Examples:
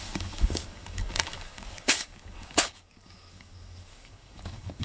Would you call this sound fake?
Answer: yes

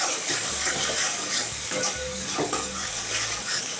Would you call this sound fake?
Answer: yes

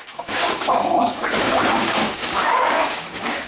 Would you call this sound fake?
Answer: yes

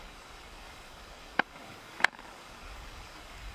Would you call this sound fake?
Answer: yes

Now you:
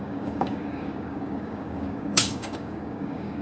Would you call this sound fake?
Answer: yes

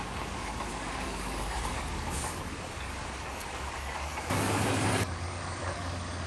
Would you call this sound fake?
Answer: yes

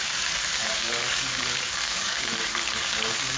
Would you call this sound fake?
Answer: yes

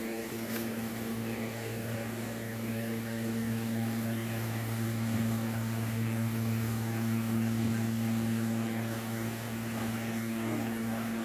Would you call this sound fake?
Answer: yes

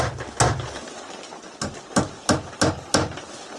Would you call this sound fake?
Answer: no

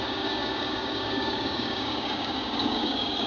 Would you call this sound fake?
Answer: yes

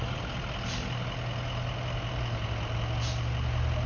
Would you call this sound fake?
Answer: no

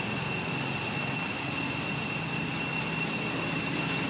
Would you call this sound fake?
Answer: no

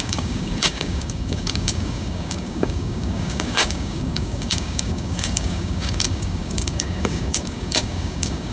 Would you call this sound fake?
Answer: yes